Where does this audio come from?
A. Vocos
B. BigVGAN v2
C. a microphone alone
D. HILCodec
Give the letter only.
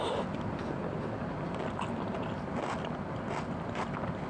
C